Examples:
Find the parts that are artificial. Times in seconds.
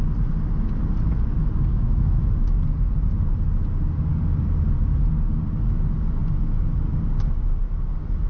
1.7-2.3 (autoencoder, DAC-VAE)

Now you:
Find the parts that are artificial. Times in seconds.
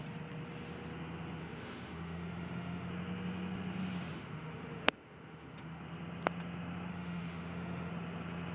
1.4-2.9 (autoencoder, DAC-VAE); 4.1-5.8; 6.9-7.9